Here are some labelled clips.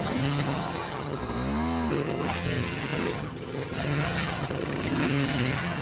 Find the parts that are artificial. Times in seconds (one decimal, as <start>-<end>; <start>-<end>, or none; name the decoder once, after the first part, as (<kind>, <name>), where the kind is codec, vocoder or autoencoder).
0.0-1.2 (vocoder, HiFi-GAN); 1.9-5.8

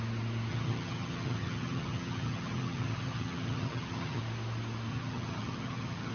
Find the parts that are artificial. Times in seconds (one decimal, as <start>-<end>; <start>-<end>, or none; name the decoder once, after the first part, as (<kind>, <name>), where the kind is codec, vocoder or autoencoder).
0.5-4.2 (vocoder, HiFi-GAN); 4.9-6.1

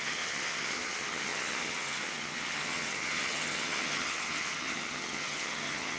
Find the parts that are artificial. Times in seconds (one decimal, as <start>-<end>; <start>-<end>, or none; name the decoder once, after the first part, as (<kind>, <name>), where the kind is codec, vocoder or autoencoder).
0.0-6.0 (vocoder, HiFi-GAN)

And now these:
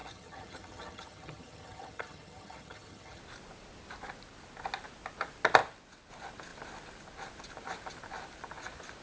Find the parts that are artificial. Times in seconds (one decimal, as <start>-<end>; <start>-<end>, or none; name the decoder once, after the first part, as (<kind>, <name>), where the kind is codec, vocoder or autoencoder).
0.0-3.2 (vocoder, HiFi-GAN)